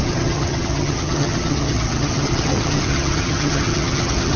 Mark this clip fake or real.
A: fake